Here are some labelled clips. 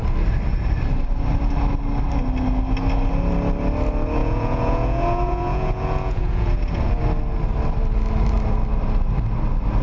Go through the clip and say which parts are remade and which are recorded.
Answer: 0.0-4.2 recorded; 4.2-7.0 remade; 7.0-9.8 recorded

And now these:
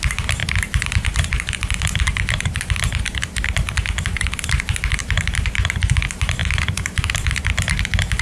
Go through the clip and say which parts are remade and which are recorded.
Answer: 0.0-5.0 recorded; 5.0-5.8 remade; 5.8-6.4 recorded; 6.4-7.4 remade; 7.4-8.2 recorded

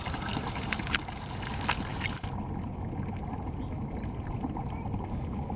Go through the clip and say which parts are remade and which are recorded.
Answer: 0.0-5.6 recorded

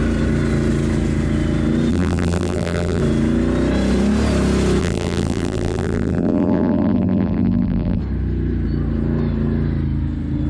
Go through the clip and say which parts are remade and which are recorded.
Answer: 0.0-1.9 recorded; 1.9-3.0 remade; 3.0-4.8 recorded; 4.8-8.0 remade; 8.0-10.5 recorded

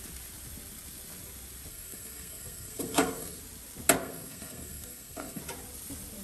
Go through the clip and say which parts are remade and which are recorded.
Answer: 0.0-1.7 recorded; 1.7-3.4 remade; 3.4-4.0 recorded; 4.0-5.4 remade; 5.4-6.2 recorded